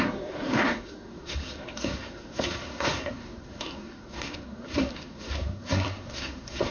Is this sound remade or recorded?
remade